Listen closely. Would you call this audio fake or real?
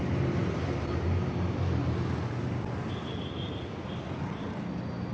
real